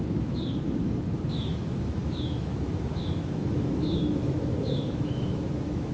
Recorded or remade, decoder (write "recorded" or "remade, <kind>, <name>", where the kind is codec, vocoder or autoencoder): remade, autoencoder, DAC-VAE